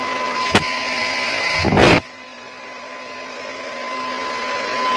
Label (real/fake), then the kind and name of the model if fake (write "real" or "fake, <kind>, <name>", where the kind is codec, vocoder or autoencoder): real